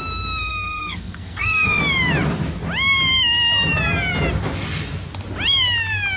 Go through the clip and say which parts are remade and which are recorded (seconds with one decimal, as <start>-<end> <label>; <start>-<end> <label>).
0.0-0.5 recorded; 0.5-1.8 remade; 1.8-6.2 recorded